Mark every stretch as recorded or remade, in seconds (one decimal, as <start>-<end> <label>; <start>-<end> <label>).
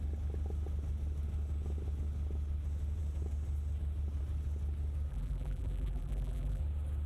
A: 0.0-5.1 recorded; 5.1-6.6 remade; 6.6-7.1 recorded